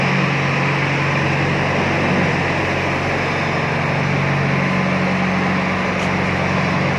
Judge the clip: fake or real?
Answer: real